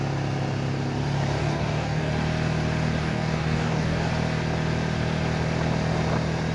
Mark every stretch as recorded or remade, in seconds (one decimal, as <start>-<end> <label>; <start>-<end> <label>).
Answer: 0.0-1.4 recorded; 1.4-2.1 remade; 2.1-3.0 recorded; 3.0-4.1 remade; 4.1-6.5 recorded